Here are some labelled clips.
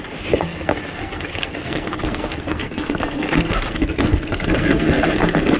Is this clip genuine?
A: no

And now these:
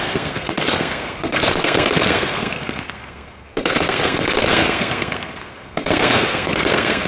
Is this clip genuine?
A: no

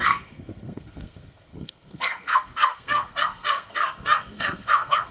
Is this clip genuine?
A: no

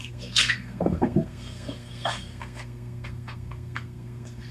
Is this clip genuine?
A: no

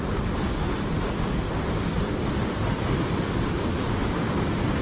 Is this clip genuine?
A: yes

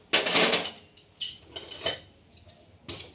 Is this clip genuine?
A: yes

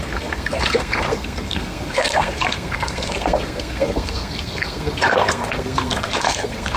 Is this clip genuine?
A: no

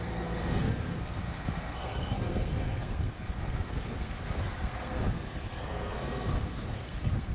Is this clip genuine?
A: no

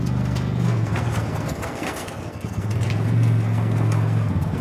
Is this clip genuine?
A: no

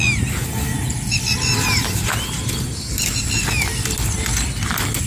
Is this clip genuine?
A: yes